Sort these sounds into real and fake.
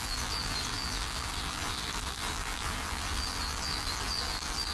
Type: fake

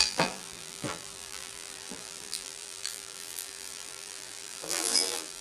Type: fake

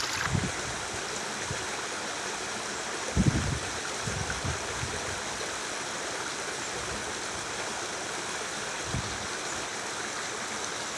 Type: real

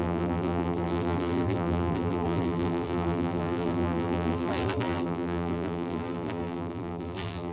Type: fake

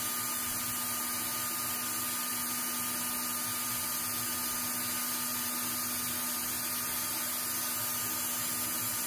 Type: real